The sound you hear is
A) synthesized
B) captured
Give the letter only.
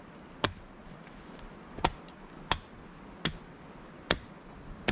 B